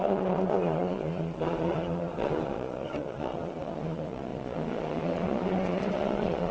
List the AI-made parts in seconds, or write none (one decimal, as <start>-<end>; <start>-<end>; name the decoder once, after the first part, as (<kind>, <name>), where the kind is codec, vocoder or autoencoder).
0.0-6.5 (vocoder, Vocos)